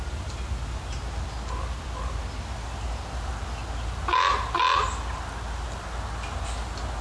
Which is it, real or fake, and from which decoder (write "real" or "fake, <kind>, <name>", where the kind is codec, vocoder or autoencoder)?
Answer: real